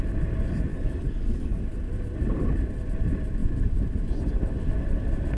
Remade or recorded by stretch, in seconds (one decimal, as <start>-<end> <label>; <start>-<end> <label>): 0.0-0.7 recorded; 0.7-1.6 remade; 1.6-5.4 recorded